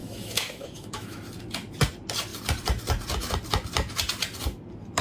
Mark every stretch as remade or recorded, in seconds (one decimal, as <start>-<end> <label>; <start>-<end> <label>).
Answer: 0.0-1.2 remade; 1.2-5.0 recorded